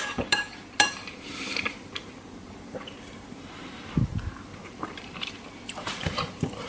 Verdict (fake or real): fake